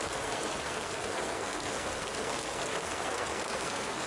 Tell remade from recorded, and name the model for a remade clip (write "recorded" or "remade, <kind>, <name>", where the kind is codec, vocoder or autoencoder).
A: remade, codec, SNAC